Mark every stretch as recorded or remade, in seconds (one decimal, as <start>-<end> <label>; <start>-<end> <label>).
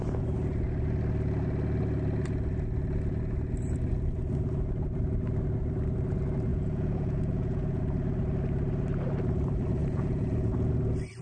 0.0-6.5 recorded; 6.5-7.8 remade; 7.8-9.8 recorded; 9.8-10.7 remade; 10.7-11.2 recorded